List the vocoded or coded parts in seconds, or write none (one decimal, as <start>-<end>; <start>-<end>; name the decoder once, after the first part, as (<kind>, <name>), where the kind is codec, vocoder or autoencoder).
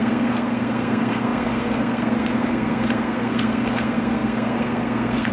0.0-5.3 (codec, SNAC)